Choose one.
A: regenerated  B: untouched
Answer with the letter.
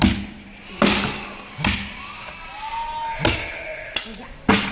B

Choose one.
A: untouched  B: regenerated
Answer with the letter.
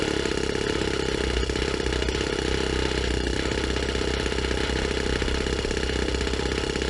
A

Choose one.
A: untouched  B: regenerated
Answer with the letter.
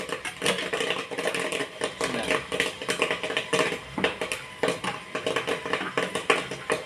A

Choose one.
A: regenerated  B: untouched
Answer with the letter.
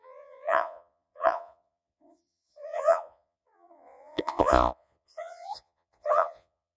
A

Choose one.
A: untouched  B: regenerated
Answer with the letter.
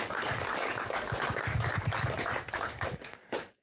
B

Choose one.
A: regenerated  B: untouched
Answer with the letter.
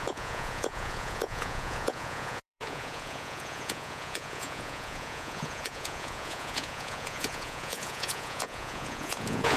A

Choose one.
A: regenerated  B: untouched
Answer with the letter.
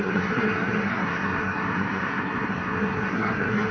A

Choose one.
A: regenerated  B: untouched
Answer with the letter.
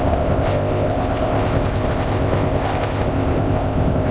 A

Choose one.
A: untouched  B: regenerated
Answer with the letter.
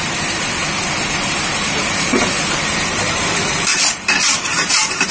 B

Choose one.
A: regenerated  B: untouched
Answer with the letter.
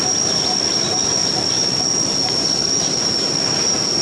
B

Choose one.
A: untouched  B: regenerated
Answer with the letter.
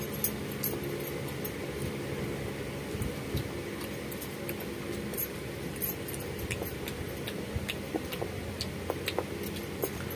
A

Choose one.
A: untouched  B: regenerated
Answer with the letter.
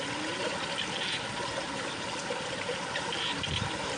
A